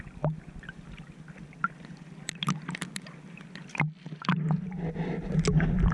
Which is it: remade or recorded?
recorded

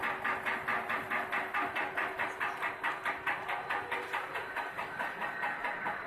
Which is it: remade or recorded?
recorded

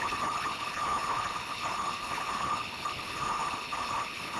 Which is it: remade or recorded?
remade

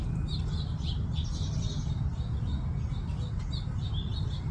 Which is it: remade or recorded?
recorded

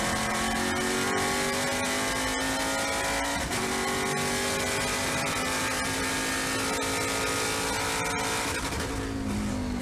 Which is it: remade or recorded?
recorded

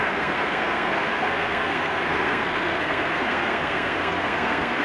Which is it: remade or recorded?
remade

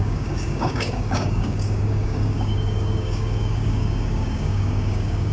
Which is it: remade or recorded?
remade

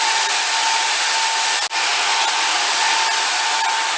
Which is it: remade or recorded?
recorded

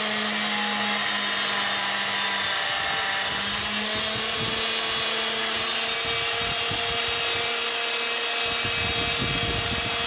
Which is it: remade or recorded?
recorded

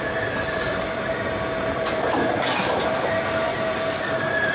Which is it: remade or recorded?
remade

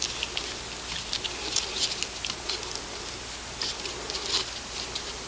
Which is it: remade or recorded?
recorded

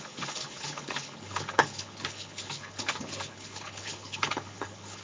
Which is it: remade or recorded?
remade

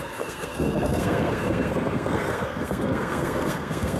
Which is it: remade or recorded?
remade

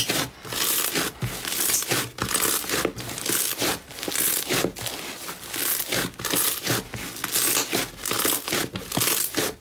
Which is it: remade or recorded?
recorded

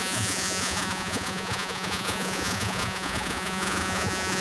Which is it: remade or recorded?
remade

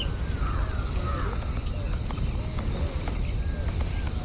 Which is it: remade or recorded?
recorded